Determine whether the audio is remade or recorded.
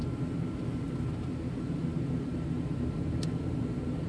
remade